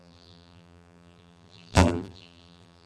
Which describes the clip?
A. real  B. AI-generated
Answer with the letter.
B